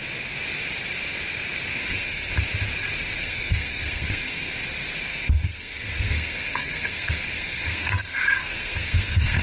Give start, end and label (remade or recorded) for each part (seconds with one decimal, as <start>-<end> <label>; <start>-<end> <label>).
0.0-1.7 recorded; 1.7-2.3 remade; 2.3-3.2 recorded; 3.2-4.5 remade; 4.5-5.1 recorded; 5.1-9.4 remade